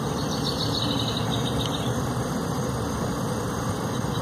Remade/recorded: recorded